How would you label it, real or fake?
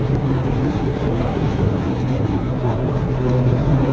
fake